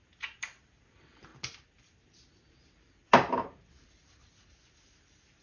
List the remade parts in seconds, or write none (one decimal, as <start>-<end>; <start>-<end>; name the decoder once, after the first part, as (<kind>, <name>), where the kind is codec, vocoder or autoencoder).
none